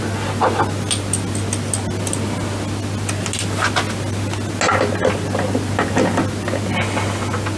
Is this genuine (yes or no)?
yes